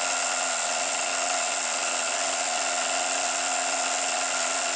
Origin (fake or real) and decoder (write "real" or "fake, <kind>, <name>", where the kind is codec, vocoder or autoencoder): real